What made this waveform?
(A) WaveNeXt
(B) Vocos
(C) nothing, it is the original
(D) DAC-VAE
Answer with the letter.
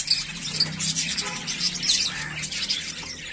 C